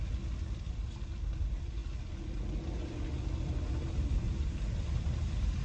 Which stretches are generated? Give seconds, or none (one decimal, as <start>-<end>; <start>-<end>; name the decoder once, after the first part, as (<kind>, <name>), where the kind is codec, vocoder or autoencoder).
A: none